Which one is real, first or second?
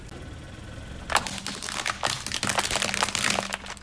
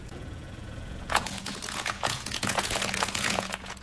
first